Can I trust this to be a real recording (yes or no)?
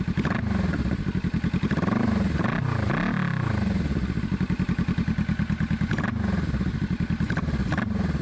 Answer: yes